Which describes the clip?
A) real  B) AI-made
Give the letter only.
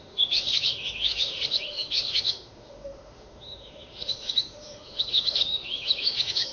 B